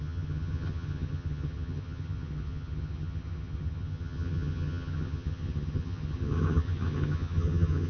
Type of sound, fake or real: fake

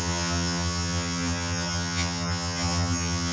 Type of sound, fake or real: fake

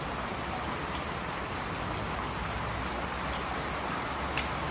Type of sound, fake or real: real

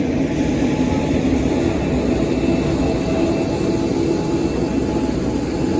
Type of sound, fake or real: real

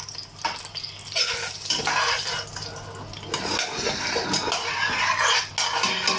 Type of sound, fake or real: real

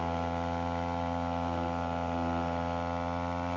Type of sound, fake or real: real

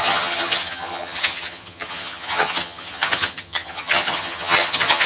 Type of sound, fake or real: fake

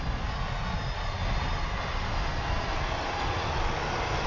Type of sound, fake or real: real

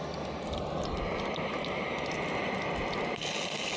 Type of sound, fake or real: real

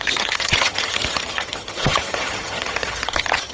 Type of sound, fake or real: fake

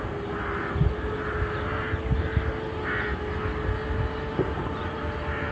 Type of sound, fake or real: real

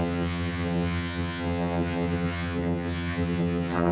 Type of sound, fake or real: fake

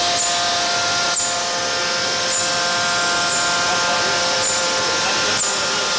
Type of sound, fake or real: real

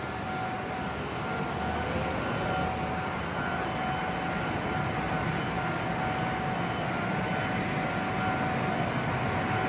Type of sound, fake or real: real